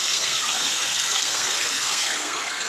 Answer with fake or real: fake